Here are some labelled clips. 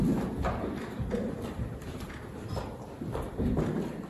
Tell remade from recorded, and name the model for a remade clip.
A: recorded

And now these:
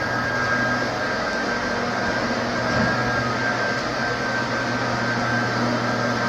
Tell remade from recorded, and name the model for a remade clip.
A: recorded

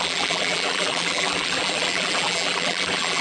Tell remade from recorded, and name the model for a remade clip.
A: remade, vocoder, BigVGAN v2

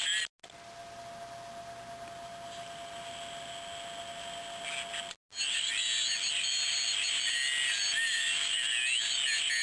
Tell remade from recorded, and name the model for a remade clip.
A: recorded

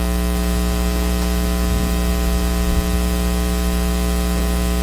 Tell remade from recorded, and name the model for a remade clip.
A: recorded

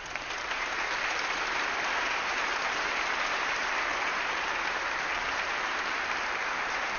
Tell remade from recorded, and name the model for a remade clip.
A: remade, vocoder, BigVGAN v2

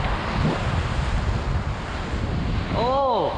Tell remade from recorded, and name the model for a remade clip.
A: recorded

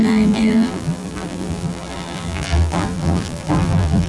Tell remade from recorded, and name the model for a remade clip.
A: remade, vocoder, BigVGAN v2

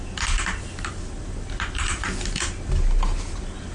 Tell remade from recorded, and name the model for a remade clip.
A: recorded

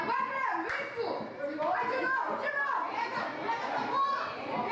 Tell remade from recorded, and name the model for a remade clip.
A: recorded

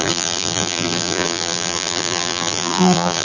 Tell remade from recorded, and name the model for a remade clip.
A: remade, vocoder, BigVGAN v2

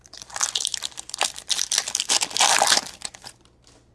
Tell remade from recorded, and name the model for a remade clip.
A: remade, vocoder, BigVGAN v2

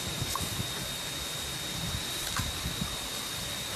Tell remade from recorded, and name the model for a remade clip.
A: recorded